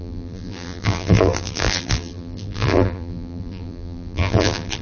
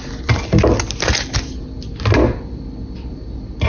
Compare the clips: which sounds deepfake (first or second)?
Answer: first